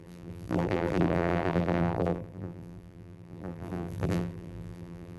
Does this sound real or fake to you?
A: fake